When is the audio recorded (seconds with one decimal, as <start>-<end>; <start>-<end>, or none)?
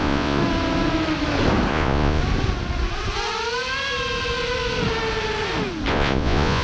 0.4-1.7; 2.2-5.9